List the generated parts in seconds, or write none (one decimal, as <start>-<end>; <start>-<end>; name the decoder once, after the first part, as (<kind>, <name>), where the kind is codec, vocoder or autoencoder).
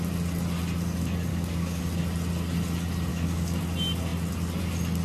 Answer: 1.3-1.8 (codec, DAC); 3.1-3.6